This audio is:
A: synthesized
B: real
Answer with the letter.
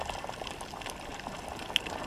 B